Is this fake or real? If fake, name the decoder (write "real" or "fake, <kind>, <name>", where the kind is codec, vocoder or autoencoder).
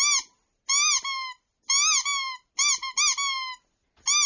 real